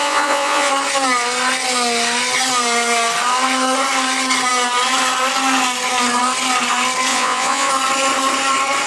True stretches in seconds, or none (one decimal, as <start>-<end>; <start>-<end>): 0.7-7.1; 7.7-8.9